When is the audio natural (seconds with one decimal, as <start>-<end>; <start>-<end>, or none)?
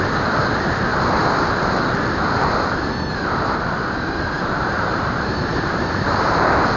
0.9-4.4